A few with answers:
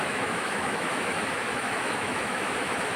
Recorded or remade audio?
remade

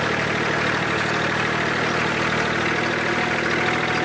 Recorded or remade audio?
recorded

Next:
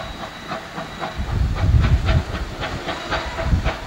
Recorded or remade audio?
recorded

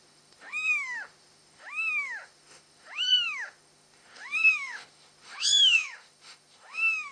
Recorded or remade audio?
remade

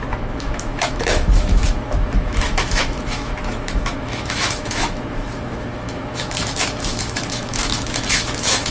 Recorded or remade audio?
remade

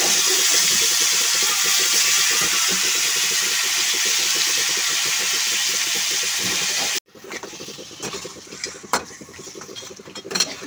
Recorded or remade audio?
recorded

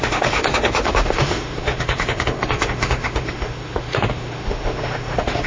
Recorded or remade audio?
remade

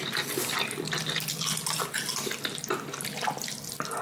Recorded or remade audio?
recorded